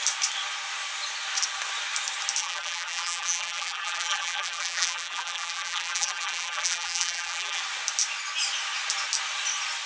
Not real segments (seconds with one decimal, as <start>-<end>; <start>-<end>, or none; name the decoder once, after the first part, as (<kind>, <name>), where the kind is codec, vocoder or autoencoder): 2.4-7.6 (vocoder, BigVGAN v2)